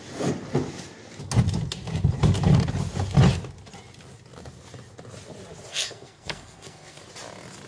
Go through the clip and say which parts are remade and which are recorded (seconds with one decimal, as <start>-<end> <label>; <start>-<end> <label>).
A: 0.0-5.7 recorded; 5.7-7.0 remade; 7.0-7.7 recorded